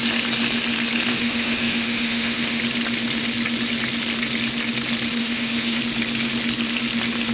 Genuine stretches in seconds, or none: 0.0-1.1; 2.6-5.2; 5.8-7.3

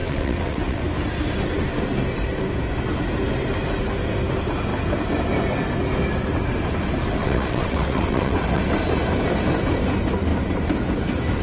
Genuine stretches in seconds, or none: 0.8-7.2; 8.6-11.4

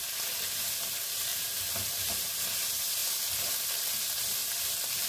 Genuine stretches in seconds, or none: 0.0-1.3; 2.4-4.4

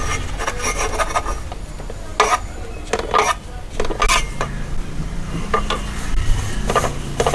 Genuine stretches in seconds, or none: 0.0-7.3